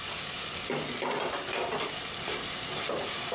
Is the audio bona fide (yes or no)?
yes